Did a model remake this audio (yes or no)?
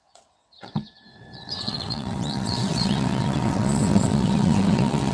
yes